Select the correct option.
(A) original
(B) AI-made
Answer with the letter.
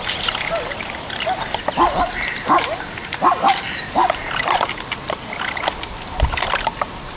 A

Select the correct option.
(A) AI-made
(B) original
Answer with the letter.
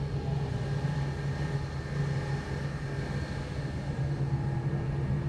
B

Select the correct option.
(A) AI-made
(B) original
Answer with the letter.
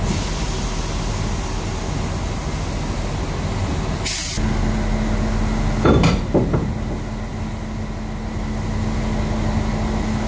B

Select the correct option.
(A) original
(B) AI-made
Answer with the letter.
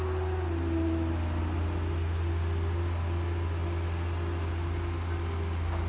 A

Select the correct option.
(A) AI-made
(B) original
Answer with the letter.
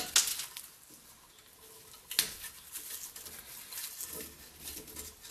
B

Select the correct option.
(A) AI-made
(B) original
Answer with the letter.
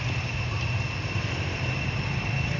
B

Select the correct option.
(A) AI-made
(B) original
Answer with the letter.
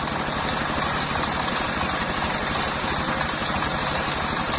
B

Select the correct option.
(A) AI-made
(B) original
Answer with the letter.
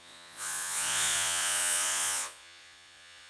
A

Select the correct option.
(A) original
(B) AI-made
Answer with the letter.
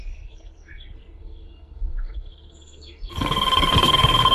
B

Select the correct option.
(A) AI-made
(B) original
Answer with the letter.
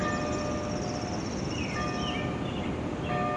B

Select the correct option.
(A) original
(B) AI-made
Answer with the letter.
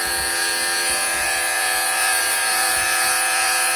B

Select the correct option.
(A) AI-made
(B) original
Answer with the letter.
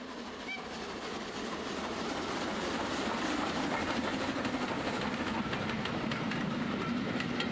B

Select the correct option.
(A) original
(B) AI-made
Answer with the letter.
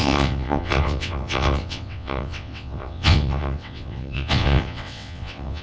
B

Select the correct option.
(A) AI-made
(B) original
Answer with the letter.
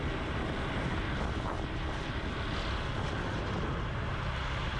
B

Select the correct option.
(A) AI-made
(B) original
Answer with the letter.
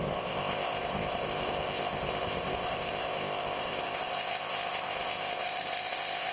A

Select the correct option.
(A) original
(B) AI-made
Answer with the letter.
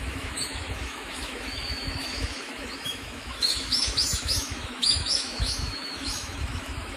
B